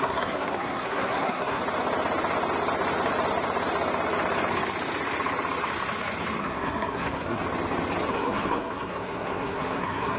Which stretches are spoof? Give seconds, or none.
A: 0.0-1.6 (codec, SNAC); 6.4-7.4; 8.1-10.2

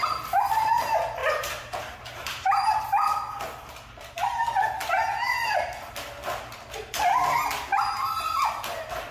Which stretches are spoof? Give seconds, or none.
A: 1.2-2.8 (vocoder, BigVGAN v2)

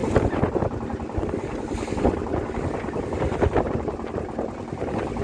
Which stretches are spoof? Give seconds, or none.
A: none

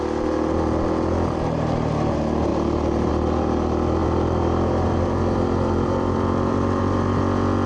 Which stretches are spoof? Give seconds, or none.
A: 2.5-3.1 (vocoder, BigVGAN v2); 4.0-7.2

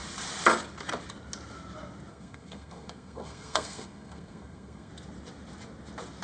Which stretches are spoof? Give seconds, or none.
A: 2.1-4.9 (codec, SNAC)